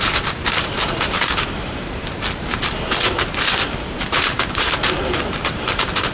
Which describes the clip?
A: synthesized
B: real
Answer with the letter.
A